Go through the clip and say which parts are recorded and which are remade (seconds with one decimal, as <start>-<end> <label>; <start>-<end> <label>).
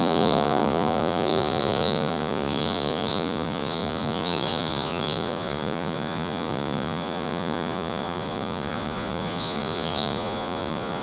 0.0-11.0 remade